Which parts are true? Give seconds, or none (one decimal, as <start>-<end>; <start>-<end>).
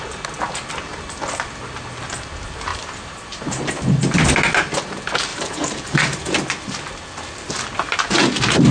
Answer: 0.0-2.7; 4.0-5.3; 6.2-8.7